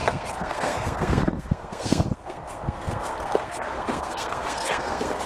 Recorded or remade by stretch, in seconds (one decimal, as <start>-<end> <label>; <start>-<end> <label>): 0.0-5.3 remade